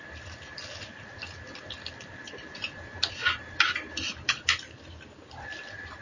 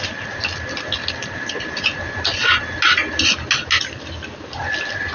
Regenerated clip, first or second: first